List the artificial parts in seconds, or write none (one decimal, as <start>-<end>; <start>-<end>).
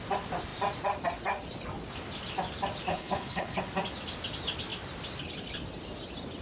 2.9-3.6